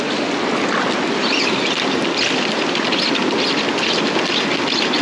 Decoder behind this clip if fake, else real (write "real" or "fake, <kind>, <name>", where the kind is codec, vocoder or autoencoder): real